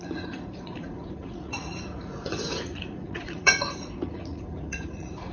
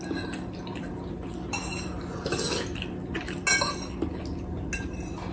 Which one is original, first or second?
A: second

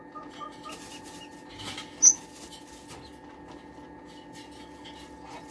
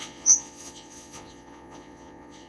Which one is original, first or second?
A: first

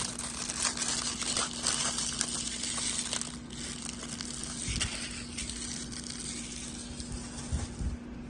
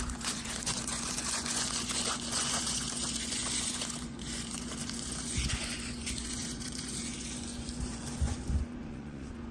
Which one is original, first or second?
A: first